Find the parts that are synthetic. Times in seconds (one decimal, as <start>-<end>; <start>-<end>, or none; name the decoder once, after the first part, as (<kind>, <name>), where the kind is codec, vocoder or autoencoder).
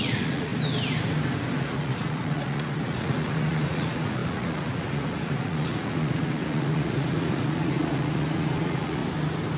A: 0.0-0.5 (vocoder, Vocos); 1.6-9.0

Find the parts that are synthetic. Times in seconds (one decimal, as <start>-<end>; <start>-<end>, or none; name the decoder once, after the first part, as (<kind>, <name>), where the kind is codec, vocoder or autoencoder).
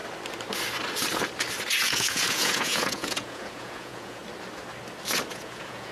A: 1.8-4.2 (vocoder, Vocos); 5.3-5.9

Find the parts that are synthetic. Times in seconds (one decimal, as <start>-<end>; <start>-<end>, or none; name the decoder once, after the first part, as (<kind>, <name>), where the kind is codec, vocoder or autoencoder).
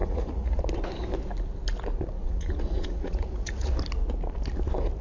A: 0.0-0.6 (vocoder, Vocos); 2.2-3.7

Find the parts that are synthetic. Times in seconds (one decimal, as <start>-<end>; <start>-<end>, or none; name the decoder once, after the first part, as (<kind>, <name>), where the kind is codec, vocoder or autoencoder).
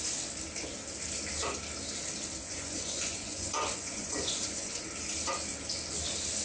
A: 2.4-4.8 (vocoder, Vocos)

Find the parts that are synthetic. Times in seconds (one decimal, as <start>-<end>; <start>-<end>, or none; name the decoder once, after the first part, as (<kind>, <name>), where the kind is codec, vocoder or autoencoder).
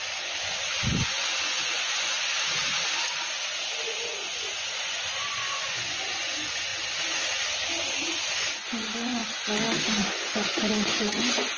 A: 0.0-2.2 (vocoder, Vocos); 4.0-6.7; 8.1-9.2; 9.9-11.6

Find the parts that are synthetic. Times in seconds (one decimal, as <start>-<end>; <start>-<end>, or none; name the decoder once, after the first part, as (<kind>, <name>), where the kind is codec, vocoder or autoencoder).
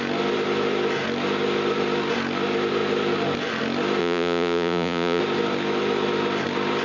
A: 4.0-5.2 (vocoder, Vocos)